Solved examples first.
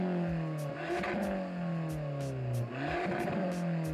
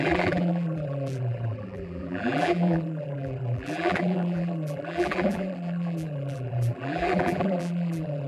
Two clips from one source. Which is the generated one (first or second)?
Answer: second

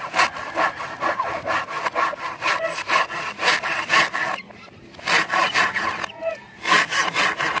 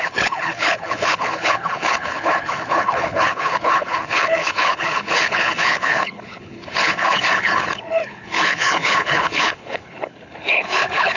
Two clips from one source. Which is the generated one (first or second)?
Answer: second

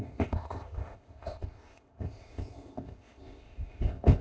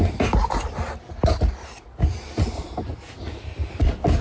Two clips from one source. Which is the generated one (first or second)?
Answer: first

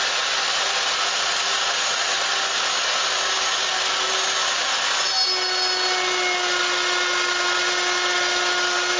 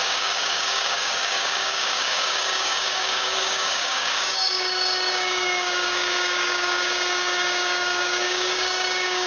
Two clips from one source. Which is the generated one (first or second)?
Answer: second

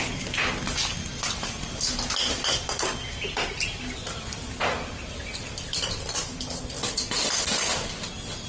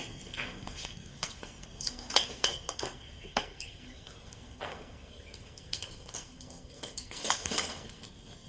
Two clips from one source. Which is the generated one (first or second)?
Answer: second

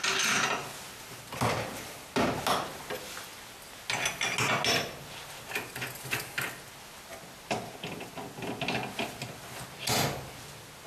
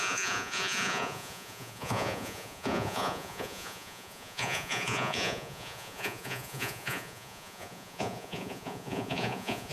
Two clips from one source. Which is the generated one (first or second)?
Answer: second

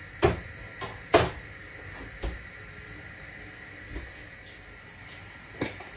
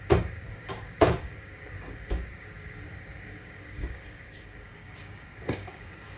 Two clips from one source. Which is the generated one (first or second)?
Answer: second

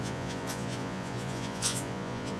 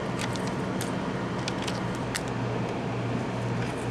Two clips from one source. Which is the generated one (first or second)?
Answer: first